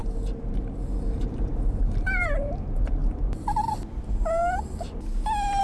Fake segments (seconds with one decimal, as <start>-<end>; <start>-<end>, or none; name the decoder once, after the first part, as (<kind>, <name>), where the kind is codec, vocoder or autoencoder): 1.8-3.0 (vocoder, BigVGAN v2); 3.9-4.4